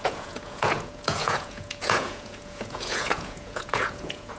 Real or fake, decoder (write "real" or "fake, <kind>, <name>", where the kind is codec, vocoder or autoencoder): fake, vocoder, Vocos